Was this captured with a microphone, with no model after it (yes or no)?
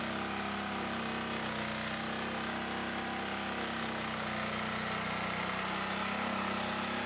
yes